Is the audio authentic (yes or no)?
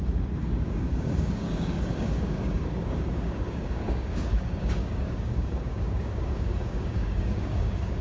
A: no